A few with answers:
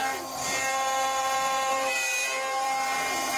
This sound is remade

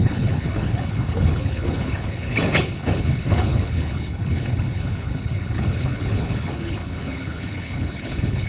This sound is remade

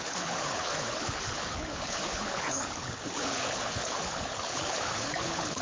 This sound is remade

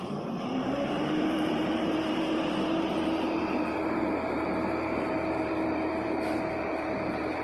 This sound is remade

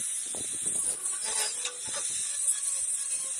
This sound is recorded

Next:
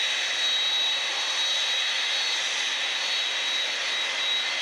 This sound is recorded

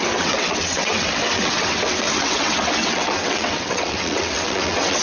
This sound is remade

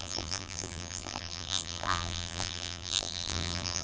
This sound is remade